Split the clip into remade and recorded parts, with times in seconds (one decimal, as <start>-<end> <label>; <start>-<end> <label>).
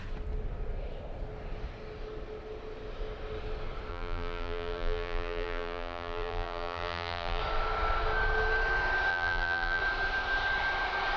0.0-3.9 recorded; 3.9-7.4 remade; 7.4-9.1 recorded; 9.1-9.8 remade; 9.8-11.2 recorded